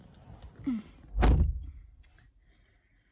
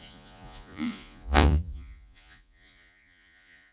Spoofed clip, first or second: second